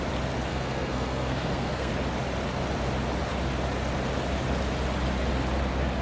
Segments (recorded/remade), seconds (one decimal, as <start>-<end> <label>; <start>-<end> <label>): 0.0-0.5 recorded; 0.5-1.9 remade; 1.9-6.0 recorded